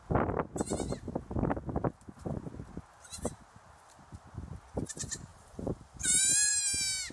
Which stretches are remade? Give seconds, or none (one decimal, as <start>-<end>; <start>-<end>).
5.3-6.5

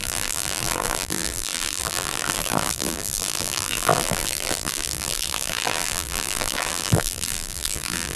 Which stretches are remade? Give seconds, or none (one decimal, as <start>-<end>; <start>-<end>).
0.0-8.2

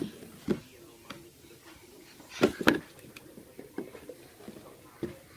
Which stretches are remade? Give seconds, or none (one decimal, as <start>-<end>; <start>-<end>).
1.2-4.4

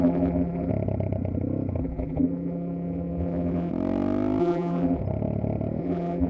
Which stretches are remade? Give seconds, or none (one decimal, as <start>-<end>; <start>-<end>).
0.0-0.7; 1.8-3.7; 4.4-5.0; 5.8-6.3

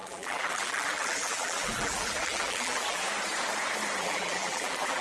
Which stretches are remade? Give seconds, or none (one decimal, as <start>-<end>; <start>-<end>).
0.0-3.0; 4.0-5.0

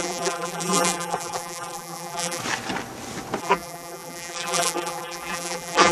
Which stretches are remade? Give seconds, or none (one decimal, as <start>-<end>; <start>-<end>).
0.0-2.4; 3.4-5.9

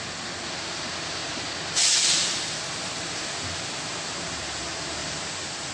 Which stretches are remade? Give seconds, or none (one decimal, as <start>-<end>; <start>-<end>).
5.0-5.7

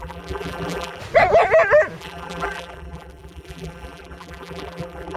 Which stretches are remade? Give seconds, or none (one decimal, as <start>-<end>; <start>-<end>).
0.0-1.0; 2.0-5.2